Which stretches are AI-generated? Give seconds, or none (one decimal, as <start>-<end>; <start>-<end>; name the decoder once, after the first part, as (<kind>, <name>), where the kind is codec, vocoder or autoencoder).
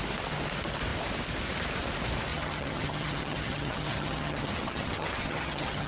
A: 2.3-5.9 (vocoder, HiFi-GAN)